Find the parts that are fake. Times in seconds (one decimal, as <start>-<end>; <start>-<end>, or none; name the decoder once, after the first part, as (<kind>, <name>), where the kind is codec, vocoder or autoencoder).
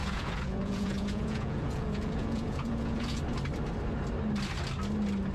0.0-3.2 (vocoder, Vocos)